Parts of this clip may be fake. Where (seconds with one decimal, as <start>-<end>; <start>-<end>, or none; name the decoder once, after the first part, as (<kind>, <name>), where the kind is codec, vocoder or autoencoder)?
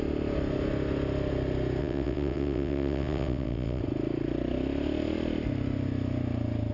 1.8-3.8 (vocoder, WaveNeXt)